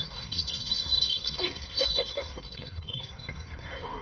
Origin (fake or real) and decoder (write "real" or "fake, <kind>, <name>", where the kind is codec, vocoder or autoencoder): fake, codec, SNAC